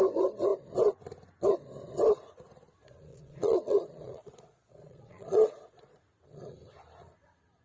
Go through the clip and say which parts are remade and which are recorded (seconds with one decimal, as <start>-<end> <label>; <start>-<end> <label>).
0.0-3.1 recorded; 3.1-6.0 remade; 6.0-7.6 recorded